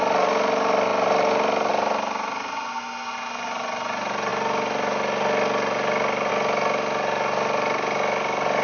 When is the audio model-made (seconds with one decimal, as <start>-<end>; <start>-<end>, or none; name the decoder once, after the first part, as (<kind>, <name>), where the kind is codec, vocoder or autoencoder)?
none